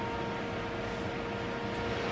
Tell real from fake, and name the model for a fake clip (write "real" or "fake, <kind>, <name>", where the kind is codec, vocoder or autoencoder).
real